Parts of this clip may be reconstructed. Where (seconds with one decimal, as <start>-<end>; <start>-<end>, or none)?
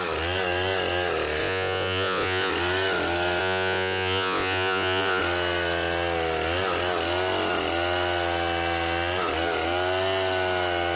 1.4-2.5; 3.4-5.2